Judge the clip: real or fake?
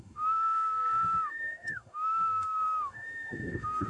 fake